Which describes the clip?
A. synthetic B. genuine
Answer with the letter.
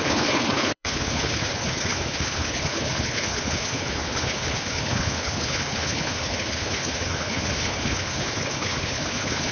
A